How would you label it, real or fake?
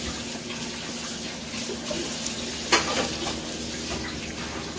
real